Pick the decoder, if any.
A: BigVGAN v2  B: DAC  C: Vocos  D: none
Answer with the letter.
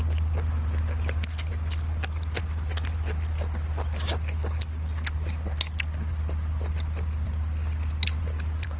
D